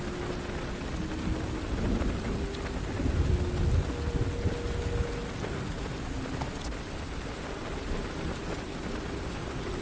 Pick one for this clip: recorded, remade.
recorded